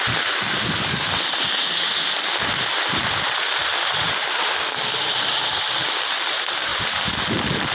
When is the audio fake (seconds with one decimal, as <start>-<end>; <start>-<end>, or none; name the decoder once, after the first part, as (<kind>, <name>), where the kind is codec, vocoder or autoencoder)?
0.0-6.7 (vocoder, BigVGAN v2)

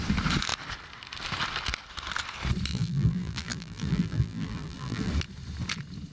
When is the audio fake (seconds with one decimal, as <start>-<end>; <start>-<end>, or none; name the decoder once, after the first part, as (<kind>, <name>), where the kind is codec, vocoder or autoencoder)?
2.7-5.1 (vocoder, BigVGAN v2)

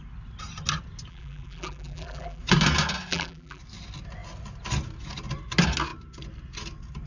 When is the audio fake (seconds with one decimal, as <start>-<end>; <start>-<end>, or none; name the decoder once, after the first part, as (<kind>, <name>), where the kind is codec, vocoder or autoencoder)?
1.1-2.4 (vocoder, BigVGAN v2); 3.1-3.6

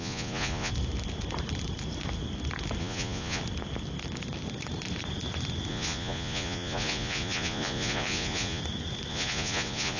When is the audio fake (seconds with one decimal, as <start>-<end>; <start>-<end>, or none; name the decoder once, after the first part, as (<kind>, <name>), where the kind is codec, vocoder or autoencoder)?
0.0-0.7 (vocoder, Vocos); 2.8-3.4; 5.7-8.6; 9.1-10.0

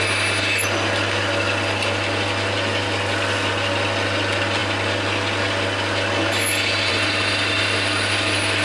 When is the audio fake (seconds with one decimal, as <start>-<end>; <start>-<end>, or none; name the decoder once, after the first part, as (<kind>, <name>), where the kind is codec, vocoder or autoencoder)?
none